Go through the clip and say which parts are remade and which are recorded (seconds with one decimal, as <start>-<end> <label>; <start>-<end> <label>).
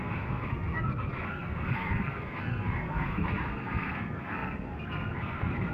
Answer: 0.0-5.7 remade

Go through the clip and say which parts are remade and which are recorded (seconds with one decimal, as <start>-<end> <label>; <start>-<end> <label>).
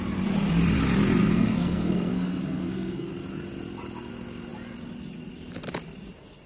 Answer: 0.0-1.2 recorded; 1.2-3.1 remade; 3.1-6.5 recorded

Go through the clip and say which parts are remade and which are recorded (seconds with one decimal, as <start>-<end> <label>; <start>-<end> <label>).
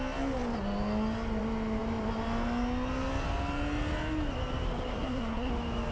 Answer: 0.0-4.9 recorded; 4.9-5.5 remade; 5.5-5.9 recorded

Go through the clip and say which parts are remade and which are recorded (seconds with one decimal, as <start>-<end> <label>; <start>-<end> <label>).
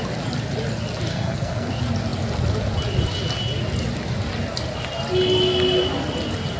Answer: 0.0-1.1 recorded; 1.1-1.7 remade; 1.7-6.6 recorded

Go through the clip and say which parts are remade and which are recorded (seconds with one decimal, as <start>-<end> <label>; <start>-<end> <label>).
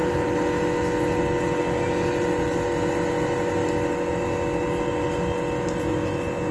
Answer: 0.0-6.5 recorded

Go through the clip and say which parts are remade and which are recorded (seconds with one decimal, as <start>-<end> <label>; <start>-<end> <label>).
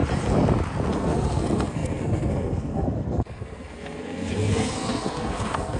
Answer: 0.0-0.9 recorded; 0.9-5.8 remade